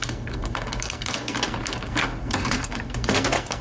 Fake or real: fake